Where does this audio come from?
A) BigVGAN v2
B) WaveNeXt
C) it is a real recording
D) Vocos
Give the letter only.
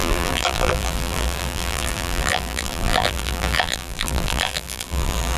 A